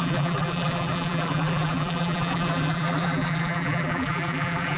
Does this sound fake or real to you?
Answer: fake